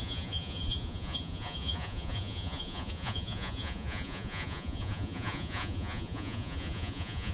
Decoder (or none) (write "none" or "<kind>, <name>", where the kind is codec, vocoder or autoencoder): vocoder, Vocos